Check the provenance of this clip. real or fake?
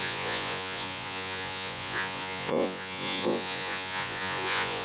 fake